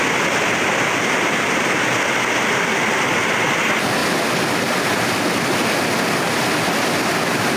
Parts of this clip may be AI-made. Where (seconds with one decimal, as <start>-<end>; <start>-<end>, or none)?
none

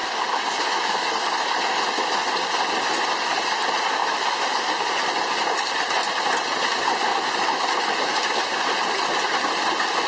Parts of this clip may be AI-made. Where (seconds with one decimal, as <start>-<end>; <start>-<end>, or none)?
0.0-2.3; 4.0-4.8; 7.1-8.1

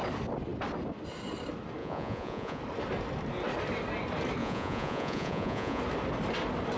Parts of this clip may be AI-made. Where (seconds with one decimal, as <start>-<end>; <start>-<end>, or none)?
1.8-2.6; 4.4-5.8

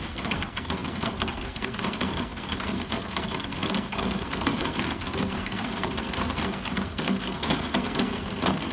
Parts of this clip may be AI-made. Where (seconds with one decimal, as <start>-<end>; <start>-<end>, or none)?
0.0-8.7

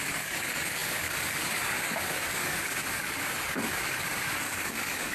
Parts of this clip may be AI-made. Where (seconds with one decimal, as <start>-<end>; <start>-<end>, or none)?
0.0-5.1

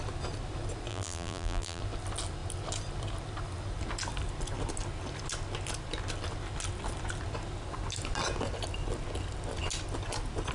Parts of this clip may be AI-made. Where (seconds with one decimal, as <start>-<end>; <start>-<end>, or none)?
0.9-1.8

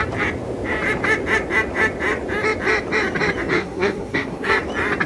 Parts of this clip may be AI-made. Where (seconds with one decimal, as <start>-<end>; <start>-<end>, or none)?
3.5-4.5